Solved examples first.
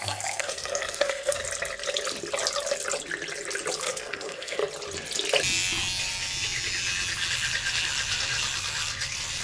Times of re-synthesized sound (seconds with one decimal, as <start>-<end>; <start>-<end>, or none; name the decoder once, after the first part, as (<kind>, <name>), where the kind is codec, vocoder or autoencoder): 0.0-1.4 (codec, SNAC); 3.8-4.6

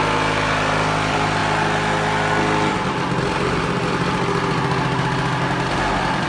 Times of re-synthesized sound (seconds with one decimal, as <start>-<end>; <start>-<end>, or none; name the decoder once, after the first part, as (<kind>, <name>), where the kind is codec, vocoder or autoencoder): none

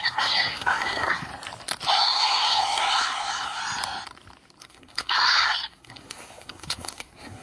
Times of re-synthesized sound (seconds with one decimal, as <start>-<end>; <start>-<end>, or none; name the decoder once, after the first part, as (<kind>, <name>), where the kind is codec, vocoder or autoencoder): 0.0-1.3 (codec, SNAC); 1.9-3.6; 4.6-7.4

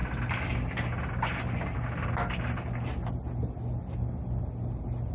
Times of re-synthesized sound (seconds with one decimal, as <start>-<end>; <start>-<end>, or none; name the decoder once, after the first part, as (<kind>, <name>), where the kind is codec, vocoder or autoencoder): none